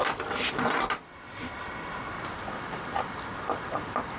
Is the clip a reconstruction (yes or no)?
no